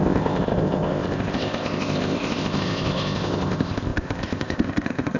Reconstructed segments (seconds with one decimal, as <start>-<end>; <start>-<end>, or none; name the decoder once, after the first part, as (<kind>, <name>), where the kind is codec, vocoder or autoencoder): 0.0-5.2 (codec, ZipCodec)